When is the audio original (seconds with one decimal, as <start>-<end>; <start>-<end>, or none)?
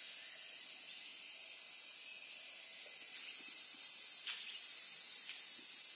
0.0-6.0